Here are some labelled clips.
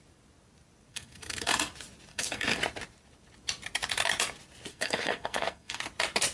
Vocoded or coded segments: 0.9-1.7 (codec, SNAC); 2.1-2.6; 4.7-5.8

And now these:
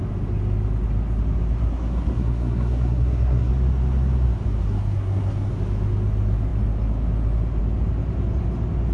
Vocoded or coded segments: 1.6-3.5 (codec, SNAC); 4.6-5.5

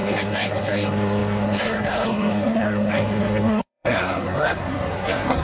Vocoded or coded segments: 0.0-5.4 (codec, SNAC)